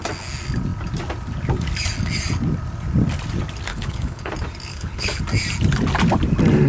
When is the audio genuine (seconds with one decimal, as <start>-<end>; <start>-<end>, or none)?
0.0-3.7; 4.3-4.7; 5.2-6.7